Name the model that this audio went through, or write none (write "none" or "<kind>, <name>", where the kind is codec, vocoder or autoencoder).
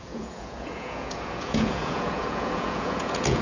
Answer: vocoder, Vocos